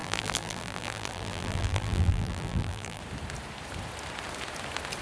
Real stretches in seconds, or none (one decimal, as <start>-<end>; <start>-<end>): 3.0-5.0